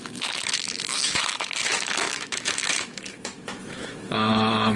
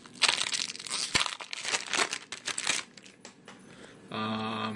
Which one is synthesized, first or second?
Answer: first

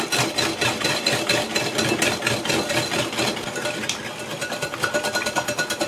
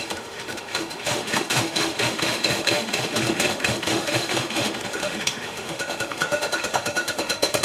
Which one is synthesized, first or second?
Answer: second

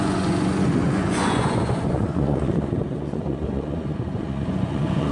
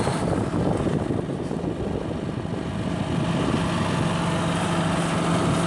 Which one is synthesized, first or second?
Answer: first